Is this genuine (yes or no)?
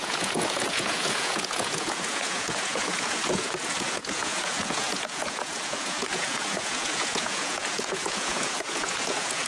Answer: no